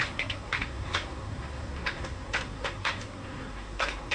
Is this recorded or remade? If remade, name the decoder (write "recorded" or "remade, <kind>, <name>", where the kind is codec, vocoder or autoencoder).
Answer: remade, codec, SNAC